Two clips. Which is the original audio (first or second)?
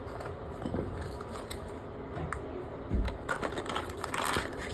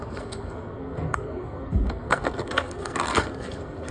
first